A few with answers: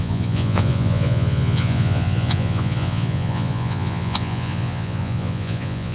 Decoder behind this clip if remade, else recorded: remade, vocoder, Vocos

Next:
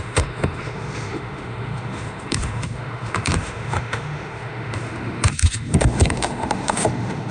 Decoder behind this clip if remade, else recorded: remade, autoencoder, DAC-VAE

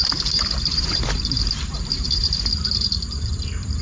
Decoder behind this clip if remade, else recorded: remade, vocoder, BigVGAN v2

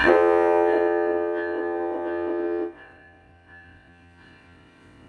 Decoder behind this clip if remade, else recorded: remade, vocoder, WaveNeXt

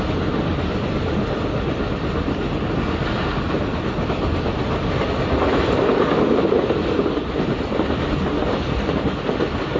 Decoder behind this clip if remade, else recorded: recorded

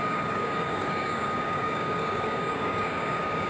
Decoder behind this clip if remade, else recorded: remade, codec, DAC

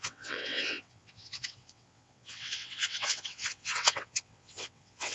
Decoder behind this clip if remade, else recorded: remade, vocoder, WaveNeXt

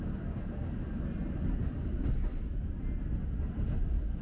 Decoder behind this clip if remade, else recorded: recorded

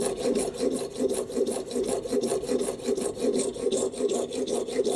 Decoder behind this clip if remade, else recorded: recorded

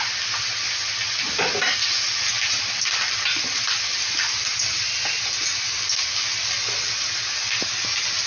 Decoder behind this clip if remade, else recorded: recorded